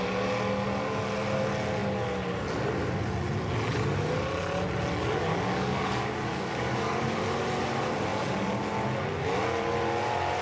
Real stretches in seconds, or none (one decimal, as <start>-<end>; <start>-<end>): 0.0-5.3; 7.2-10.4